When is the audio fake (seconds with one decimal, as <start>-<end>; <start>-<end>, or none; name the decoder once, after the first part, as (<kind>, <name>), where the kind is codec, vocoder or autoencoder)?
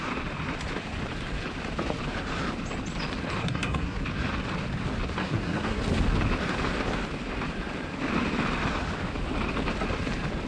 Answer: 3.4-4.0 (codec, SNAC); 5.2-5.8